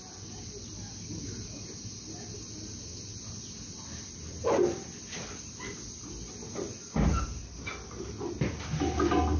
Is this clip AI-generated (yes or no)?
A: no